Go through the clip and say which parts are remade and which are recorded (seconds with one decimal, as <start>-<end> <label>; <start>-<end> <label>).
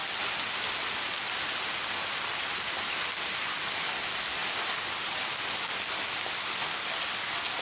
0.0-7.6 recorded